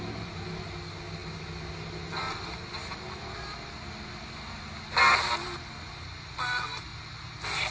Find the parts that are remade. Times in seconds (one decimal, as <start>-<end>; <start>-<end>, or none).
none

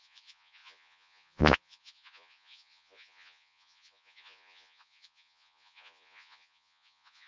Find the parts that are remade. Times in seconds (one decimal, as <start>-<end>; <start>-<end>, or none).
0.0-7.3

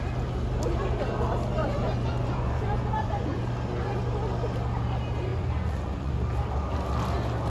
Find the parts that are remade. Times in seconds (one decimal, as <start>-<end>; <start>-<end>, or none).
1.6-3.5; 5.3-6.1

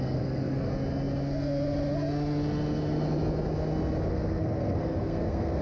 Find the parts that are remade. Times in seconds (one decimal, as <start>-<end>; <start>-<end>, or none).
0.0-0.7; 4.1-5.6

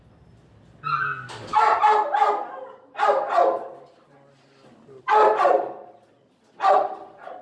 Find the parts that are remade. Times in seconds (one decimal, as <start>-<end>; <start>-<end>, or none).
none

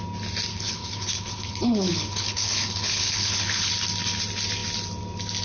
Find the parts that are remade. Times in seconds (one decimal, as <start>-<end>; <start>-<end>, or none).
0.5-3.7

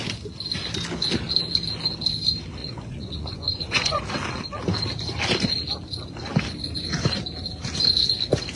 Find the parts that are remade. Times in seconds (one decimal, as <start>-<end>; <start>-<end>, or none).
2.6-4.0